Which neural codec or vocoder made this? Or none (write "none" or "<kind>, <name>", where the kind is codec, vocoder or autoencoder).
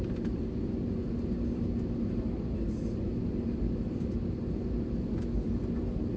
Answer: none